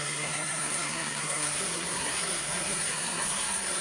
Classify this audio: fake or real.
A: fake